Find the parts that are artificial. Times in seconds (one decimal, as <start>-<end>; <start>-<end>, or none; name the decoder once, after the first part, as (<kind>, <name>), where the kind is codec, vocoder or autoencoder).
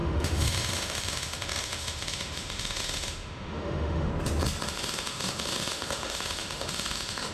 0.0-4.1 (autoencoder, DAC-VAE); 4.7-7.3